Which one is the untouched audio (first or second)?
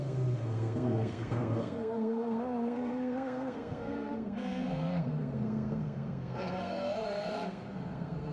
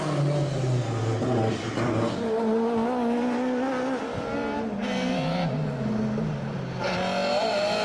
second